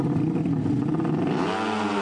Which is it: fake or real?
real